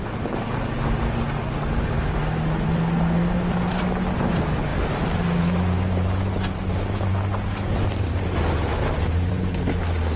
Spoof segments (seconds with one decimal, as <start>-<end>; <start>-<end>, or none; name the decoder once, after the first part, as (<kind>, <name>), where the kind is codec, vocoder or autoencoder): none